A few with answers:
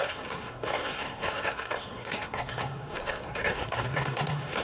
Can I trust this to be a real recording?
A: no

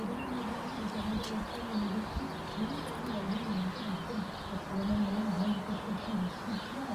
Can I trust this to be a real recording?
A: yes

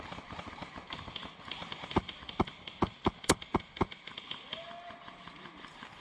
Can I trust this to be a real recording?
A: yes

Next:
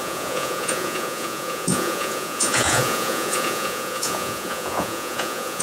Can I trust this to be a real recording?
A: no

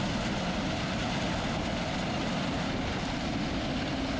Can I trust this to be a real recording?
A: yes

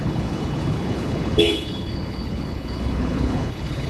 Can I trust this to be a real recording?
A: no